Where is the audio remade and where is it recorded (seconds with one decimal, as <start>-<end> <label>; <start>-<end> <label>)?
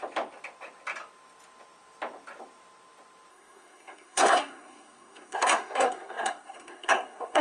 0.0-3.3 recorded; 3.3-7.4 remade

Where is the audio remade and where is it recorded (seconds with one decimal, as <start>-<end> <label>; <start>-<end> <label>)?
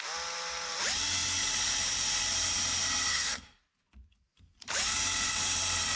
0.0-3.1 recorded; 3.1-3.6 remade; 3.6-6.0 recorded